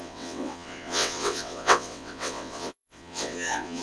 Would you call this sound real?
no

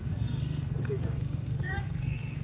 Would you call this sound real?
no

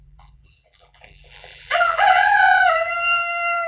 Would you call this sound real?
no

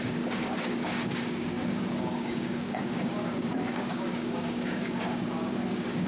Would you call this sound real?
no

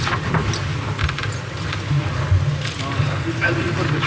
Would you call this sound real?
yes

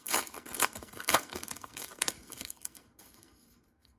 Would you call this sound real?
no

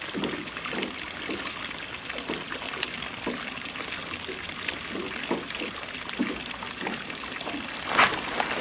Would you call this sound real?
yes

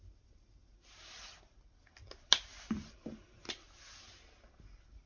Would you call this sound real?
yes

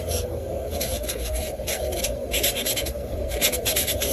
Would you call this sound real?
no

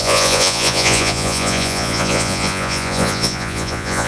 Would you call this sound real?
no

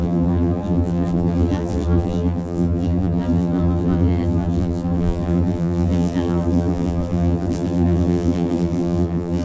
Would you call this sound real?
no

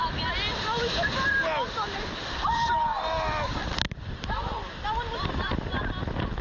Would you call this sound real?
yes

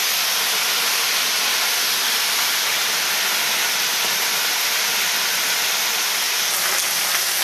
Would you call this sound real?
yes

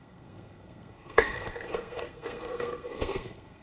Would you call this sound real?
no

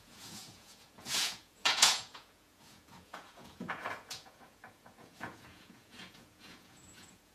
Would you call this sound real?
no